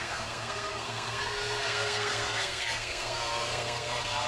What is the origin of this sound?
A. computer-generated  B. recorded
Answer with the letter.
A